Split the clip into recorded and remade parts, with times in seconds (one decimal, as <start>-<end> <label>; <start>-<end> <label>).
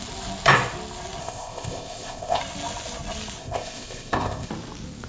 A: 0.0-1.2 recorded; 1.2-2.4 remade; 2.4-3.4 recorded; 3.4-4.5 remade; 4.5-5.1 recorded